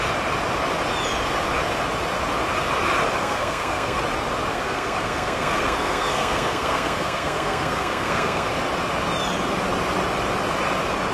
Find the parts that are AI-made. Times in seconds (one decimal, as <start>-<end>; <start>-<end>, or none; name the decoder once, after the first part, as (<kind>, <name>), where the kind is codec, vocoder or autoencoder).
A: 3.2-4.0 (codec, SNAC); 4.5-8.5

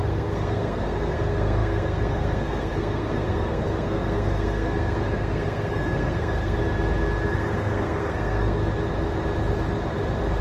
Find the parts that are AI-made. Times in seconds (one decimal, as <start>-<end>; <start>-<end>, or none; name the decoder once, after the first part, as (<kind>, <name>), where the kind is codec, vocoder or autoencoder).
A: 0.0-6.6 (codec, SNAC); 7.3-8.6

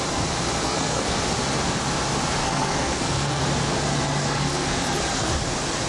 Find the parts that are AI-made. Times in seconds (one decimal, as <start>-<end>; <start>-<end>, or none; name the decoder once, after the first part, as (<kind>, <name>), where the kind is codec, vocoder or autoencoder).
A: 0.6-1.2 (codec, SNAC); 2.4-3.4; 4.2-5.3

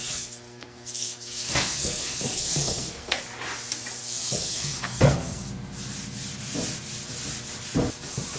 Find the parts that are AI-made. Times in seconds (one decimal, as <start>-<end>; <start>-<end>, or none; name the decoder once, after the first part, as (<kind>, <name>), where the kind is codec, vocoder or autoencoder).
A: 0.0-3.2 (codec, SNAC); 4.0-5.5

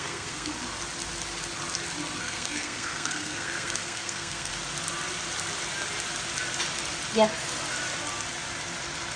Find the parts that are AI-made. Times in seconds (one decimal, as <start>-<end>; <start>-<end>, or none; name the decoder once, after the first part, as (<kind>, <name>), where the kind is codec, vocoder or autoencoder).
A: 0.0-0.5 (codec, SNAC); 2.2-4.5

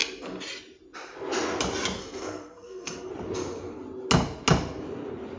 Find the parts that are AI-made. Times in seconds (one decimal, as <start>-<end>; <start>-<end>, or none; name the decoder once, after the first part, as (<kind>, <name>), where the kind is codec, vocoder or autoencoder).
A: 2.0-3.1 (codec, SNAC)

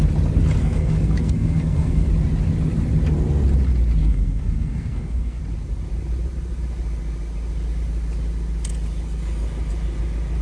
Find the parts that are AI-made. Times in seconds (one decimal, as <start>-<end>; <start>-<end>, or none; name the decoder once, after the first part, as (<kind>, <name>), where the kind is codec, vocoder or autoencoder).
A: 0.6-2.1 (codec, SNAC); 4.0-5.4